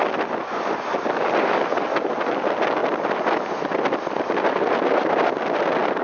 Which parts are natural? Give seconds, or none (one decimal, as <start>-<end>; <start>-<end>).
0.0-6.0